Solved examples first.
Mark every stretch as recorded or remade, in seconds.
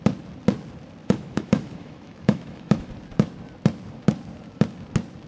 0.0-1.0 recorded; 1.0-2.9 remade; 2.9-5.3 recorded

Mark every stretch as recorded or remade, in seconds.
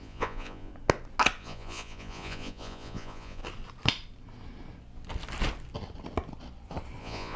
0.0-0.7 remade; 0.7-1.4 recorded; 1.4-3.4 remade; 3.4-7.0 recorded; 7.0-7.4 remade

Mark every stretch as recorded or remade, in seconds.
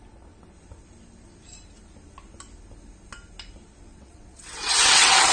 0.0-3.9 recorded; 3.9-5.3 remade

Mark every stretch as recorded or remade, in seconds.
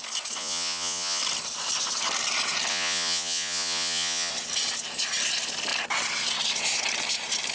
0.0-0.4 recorded; 0.4-1.2 remade; 1.2-2.7 recorded; 2.7-4.3 remade; 4.3-7.5 recorded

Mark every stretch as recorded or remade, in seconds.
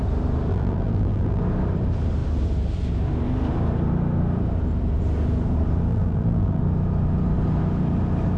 0.0-0.5 recorded; 0.5-1.4 remade; 1.4-5.9 recorded; 5.9-6.6 remade; 6.6-8.4 recorded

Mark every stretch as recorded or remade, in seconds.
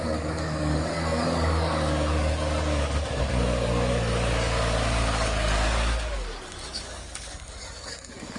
0.0-8.4 remade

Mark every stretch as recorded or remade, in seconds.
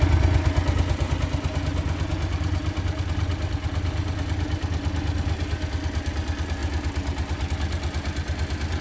0.0-2.1 recorded; 2.1-3.0 remade; 3.0-6.6 recorded; 6.6-7.5 remade; 7.5-8.8 recorded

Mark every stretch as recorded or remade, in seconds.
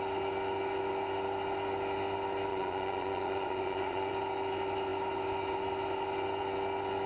0.0-2.5 recorded; 2.5-4.1 remade; 4.1-7.1 recorded